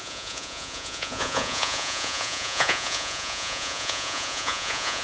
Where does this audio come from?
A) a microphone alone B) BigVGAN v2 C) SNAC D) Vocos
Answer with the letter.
D